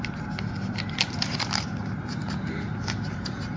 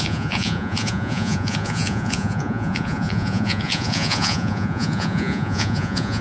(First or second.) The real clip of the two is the first